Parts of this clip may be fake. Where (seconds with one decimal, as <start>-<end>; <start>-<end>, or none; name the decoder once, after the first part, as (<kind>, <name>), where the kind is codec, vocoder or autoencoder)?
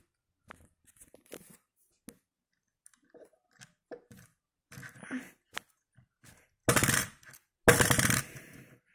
none